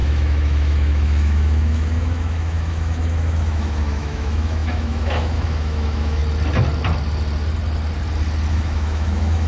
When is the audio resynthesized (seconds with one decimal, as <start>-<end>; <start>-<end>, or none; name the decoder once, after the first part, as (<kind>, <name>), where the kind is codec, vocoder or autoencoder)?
0.0-6.2 (autoencoder, DAC-VAE); 8.5-9.5